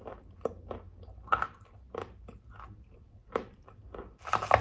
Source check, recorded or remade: recorded